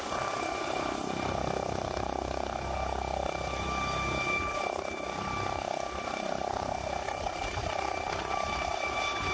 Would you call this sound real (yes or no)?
yes